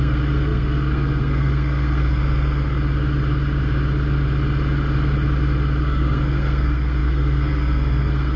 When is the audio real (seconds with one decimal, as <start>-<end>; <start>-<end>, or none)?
2.2-5.8

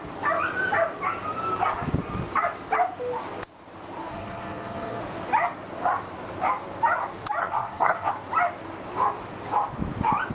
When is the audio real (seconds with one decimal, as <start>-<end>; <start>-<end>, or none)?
0.0-4.1; 5.0-7.4; 8.1-10.3

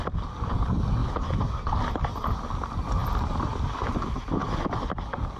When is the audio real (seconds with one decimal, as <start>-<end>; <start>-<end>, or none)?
0.0-5.4

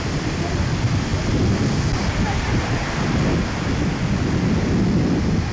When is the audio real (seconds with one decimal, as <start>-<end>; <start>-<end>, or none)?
0.0-5.5

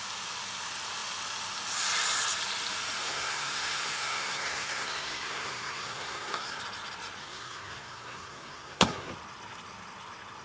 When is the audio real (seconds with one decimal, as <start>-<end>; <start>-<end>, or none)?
0.0-3.0; 6.6-7.2; 9.1-10.4

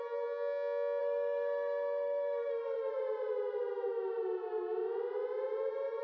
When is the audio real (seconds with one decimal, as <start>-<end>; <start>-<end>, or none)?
0.0-1.0; 2.9-6.0